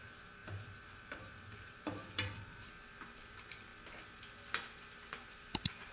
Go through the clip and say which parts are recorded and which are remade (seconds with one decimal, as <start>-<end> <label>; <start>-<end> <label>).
0.0-3.7 remade; 3.7-4.7 recorded; 4.7-5.9 remade